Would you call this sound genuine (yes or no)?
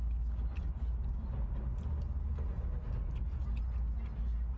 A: yes